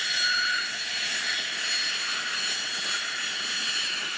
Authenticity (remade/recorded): recorded